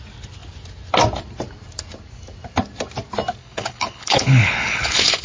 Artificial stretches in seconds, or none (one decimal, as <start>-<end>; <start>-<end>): 3.4-5.2